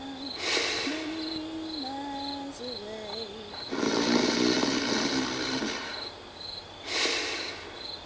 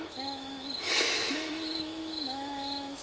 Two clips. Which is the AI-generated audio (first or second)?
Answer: second